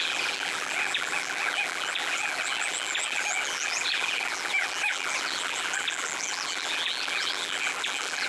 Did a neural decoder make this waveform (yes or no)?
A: yes